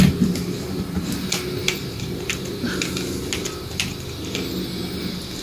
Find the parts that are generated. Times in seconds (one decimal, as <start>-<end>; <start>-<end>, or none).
1.6-2.4